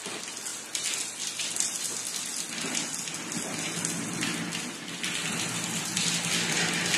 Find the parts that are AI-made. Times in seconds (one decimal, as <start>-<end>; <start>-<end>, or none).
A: none